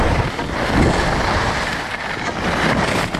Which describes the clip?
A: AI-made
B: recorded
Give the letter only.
B